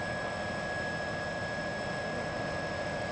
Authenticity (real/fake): real